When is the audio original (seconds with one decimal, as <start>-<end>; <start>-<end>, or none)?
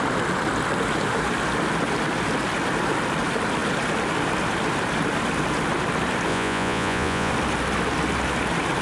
0.0-6.3; 7.3-8.8